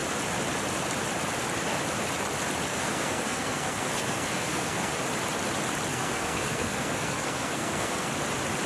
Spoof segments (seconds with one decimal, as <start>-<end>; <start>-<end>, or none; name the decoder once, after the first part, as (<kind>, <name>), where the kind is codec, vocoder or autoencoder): 2.7-4.9 (codec, SNAC); 5.9-8.1